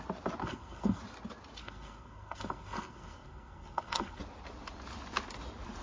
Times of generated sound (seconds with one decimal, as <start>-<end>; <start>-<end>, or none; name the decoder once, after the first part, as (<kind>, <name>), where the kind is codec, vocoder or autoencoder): 0.4-1.0 (codec, SNAC); 1.6-4.2